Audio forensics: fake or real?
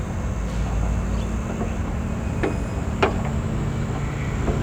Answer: real